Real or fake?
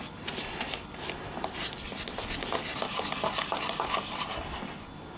real